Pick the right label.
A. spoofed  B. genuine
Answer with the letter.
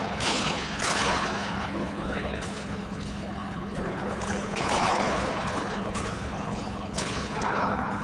A